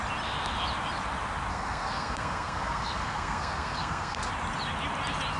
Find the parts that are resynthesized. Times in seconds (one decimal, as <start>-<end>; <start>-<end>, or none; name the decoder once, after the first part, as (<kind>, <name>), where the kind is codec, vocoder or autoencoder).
1.5-4.3 (codec, SNAC)